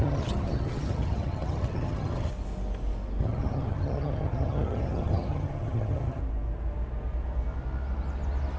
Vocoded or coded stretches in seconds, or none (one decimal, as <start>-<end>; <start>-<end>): 0.0-2.3; 3.2-6.2